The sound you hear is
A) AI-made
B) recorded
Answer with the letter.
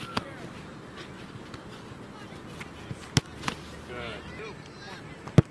B